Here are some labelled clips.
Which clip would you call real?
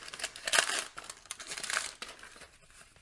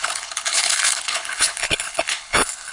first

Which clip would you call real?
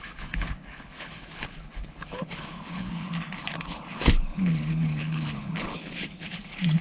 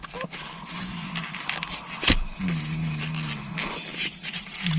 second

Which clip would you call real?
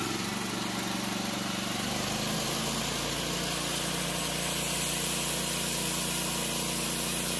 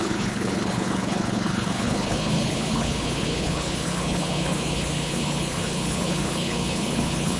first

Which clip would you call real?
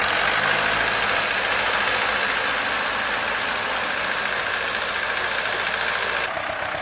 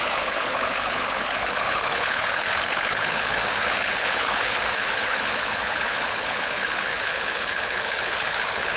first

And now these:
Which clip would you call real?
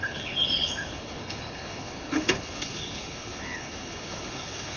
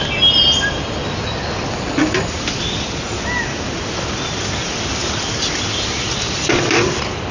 second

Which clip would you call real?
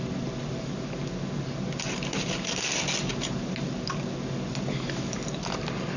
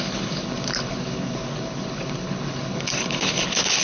first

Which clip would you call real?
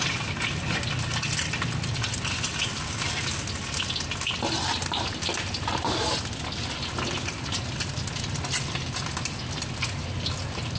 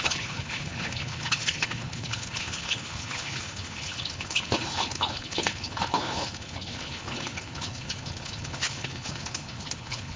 first